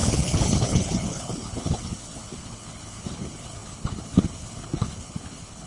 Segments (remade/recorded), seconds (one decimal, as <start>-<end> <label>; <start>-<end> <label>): 0.0-5.7 remade